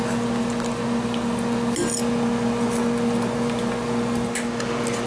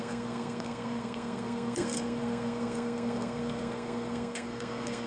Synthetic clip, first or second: second